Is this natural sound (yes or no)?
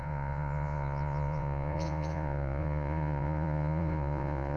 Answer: no